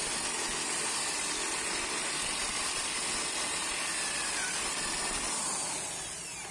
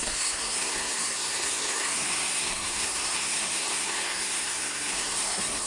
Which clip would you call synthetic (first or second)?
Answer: second